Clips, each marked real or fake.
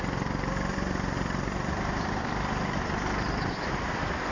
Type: fake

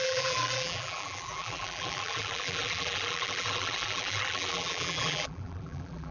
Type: fake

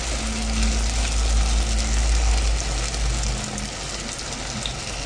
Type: real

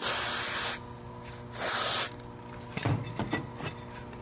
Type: real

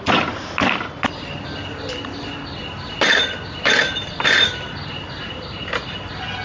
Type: real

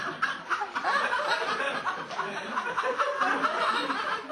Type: fake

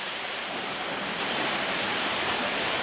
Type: fake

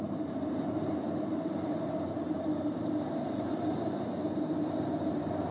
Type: fake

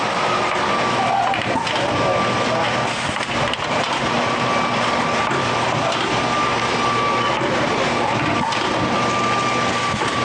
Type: real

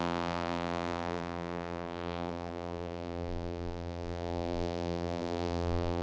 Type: fake